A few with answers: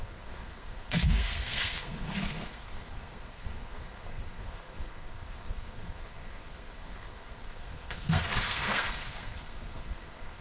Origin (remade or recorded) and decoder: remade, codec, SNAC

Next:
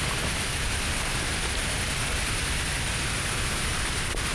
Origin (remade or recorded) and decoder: recorded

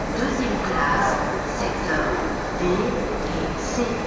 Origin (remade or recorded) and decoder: recorded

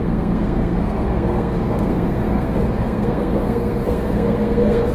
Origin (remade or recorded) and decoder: remade, codec, SNAC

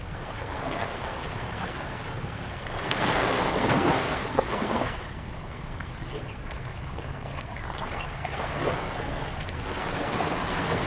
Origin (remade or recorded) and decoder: remade, codec, SNAC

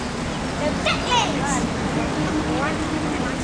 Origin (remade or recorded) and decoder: recorded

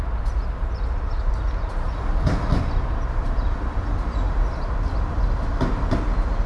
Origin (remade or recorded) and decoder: recorded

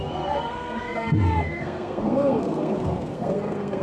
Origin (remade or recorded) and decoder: remade, codec, SNAC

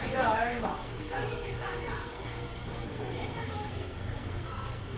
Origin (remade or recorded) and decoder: remade, codec, SNAC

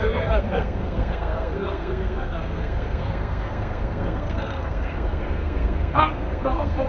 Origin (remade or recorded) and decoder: remade, codec, SNAC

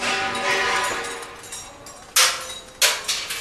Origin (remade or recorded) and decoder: recorded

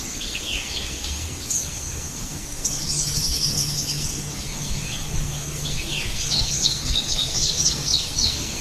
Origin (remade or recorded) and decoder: remade, codec, SNAC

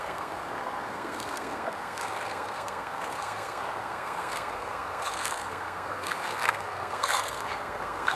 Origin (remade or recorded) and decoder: remade, codec, SNAC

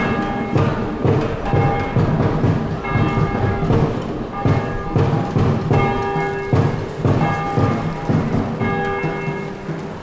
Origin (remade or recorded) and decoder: recorded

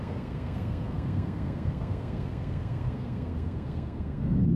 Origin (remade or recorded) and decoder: remade, codec, SNAC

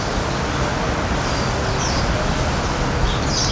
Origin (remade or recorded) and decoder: recorded